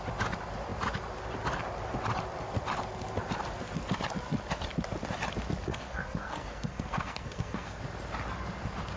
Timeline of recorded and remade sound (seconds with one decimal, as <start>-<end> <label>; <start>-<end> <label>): 0.0-5.7 recorded; 5.7-7.8 remade; 7.8-9.0 recorded